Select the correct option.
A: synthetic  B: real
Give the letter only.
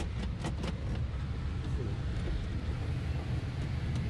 B